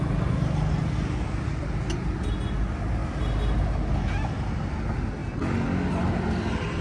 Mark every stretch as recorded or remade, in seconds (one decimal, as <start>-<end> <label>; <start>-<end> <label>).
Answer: 0.0-6.8 recorded